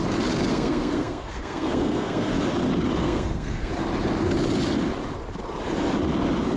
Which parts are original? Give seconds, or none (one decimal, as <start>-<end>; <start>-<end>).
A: 0.0-0.5; 2.3-3.0; 3.7-6.6